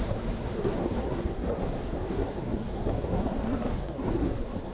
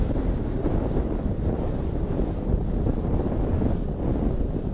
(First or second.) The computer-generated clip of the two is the first